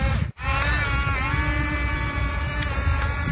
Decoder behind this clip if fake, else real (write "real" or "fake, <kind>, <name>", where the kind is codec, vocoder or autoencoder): real